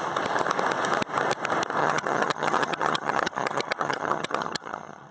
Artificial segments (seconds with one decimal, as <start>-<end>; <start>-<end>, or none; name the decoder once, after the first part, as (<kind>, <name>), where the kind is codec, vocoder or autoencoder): 1.8-5.1 (vocoder, HiFi-GAN)